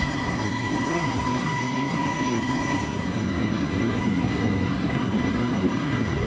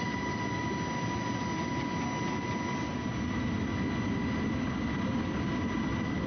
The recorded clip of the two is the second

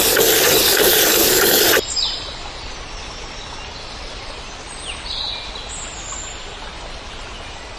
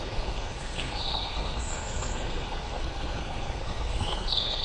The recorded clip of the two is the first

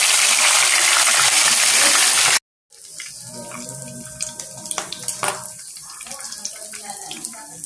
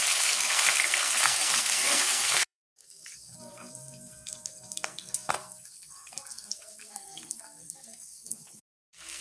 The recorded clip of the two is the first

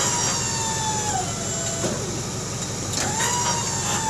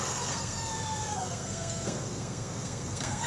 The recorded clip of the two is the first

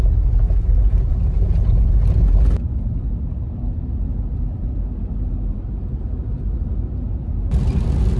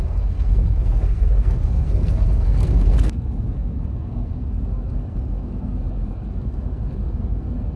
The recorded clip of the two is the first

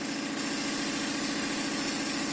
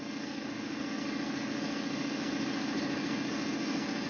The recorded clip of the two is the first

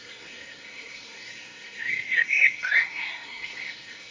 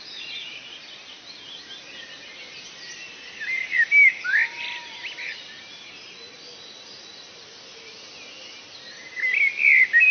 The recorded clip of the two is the second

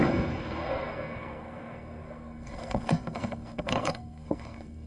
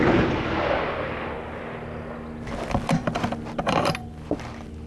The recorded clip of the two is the second